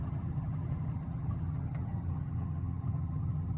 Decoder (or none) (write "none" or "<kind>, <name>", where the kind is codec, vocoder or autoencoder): vocoder, HiFi-GAN